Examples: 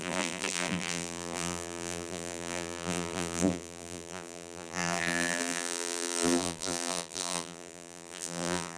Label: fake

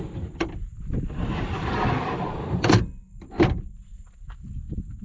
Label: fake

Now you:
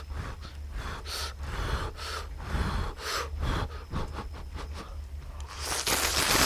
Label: real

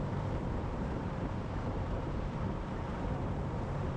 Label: fake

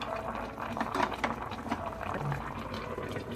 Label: fake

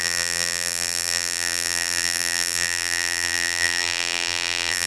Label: fake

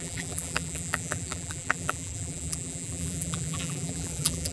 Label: fake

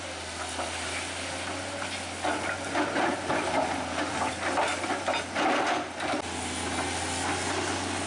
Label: real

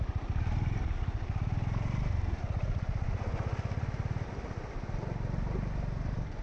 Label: fake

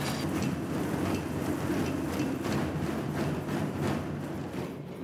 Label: real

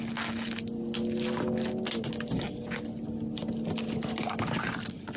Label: real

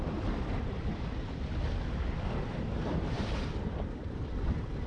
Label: fake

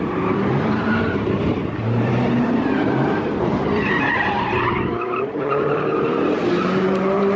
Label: fake